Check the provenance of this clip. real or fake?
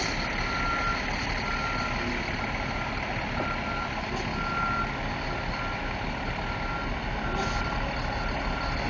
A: real